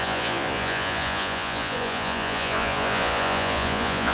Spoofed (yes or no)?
yes